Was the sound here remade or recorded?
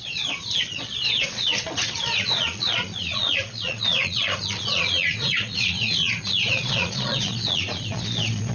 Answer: remade